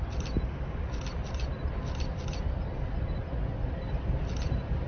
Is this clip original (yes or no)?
yes